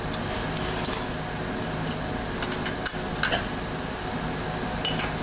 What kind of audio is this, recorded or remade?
recorded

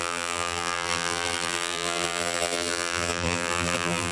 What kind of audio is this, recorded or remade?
remade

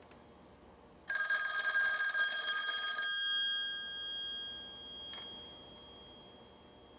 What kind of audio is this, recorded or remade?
recorded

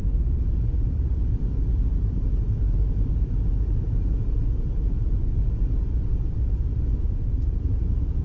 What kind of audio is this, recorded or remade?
remade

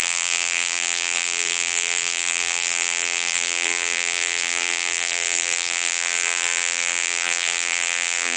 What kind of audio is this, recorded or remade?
remade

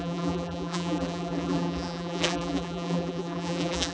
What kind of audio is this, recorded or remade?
remade